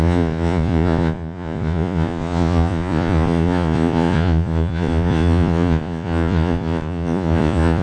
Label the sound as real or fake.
fake